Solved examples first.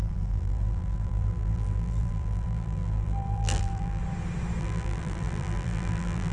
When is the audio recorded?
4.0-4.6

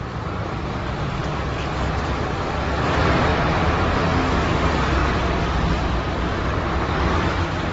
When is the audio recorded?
1.2-1.8; 3.3-4.4; 5.0-6.4

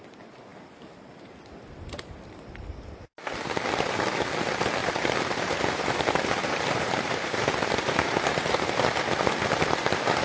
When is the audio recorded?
0.0-4.8; 8.7-10.2

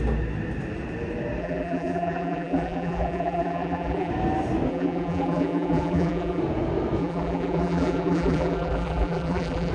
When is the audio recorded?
0.0-1.4; 4.1-4.7; 6.4-7.0

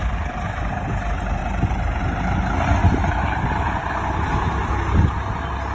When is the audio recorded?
0.6-1.4; 2.0-2.8; 3.9-5.7

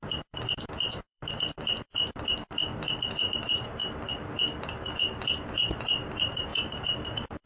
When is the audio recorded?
3.8-5.3

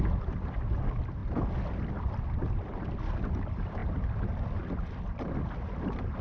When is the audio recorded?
1.2-1.9; 3.8-4.8

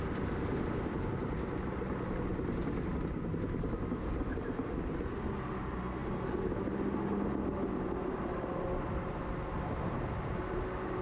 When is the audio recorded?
0.0-11.0